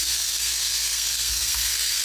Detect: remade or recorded remade